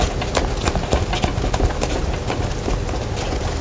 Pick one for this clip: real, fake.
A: real